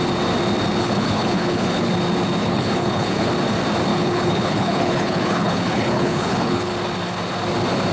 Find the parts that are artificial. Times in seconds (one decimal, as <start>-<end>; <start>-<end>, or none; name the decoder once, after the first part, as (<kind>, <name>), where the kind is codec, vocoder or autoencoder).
0.7-1.9 (codec, HILCodec); 2.4-3.3; 3.9-6.7